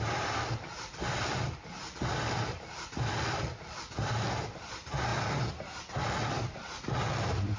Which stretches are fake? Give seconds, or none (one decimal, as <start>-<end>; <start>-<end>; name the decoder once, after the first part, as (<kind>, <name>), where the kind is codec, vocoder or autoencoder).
0.0-5.1 (vocoder, BigVGAN v2); 6.0-7.6